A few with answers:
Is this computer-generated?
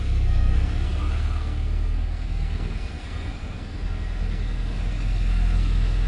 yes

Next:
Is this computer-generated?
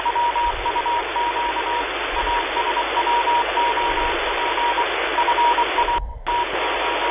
no